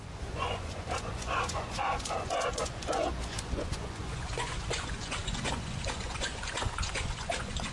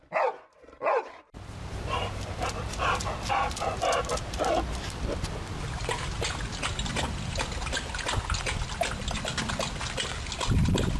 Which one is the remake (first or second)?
first